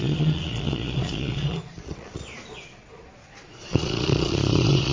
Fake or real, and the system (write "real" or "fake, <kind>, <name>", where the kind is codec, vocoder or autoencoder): fake, vocoder, Vocos